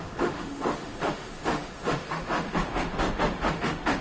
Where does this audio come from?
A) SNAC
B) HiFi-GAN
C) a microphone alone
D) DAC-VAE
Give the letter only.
D